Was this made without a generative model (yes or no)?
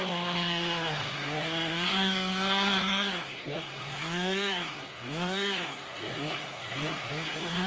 no